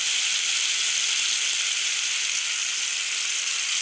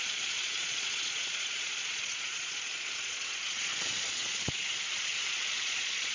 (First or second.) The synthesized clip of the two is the second